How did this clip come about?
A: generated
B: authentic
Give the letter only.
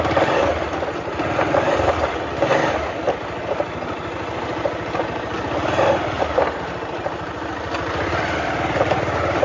A